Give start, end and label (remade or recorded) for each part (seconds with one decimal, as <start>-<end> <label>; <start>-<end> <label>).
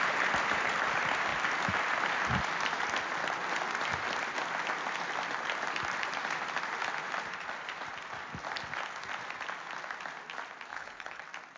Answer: 0.0-10.7 recorded; 10.7-11.2 remade; 11.2-11.6 recorded